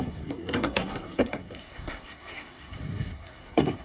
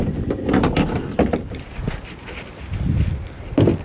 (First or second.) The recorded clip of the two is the second